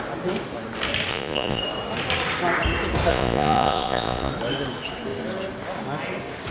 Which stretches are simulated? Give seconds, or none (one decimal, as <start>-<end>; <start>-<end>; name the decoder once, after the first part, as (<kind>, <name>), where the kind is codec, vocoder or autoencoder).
1.1-1.6 (vocoder, Vocos); 3.1-4.3